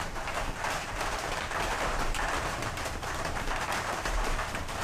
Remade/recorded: remade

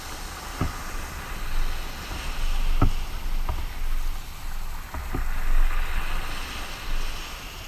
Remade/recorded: recorded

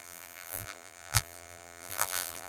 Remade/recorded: remade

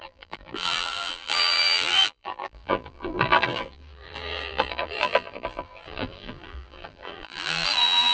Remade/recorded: remade